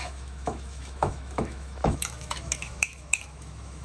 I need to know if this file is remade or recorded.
remade